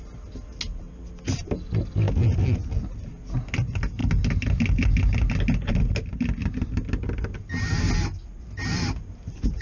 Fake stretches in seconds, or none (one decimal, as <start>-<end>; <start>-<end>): none